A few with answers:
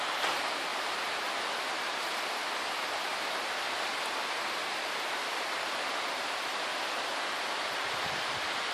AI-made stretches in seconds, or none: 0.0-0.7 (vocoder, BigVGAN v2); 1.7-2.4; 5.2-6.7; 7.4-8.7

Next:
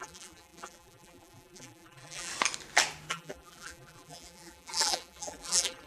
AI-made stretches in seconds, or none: 0.0-2.3 (vocoder, BigVGAN v2); 3.1-5.9

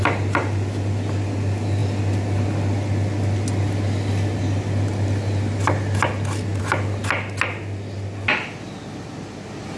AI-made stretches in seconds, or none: none

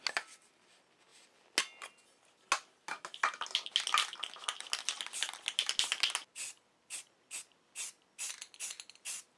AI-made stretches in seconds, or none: none